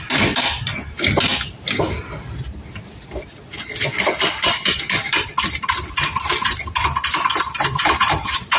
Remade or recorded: recorded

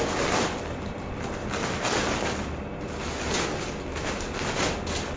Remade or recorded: recorded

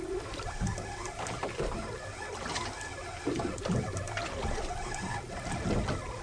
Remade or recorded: recorded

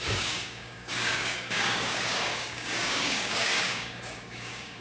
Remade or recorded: remade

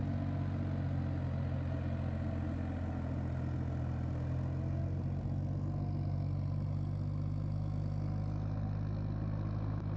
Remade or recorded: recorded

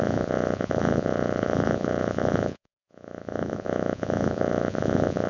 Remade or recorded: remade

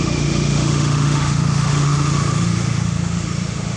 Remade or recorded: remade